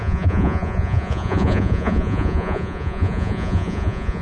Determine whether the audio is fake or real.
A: fake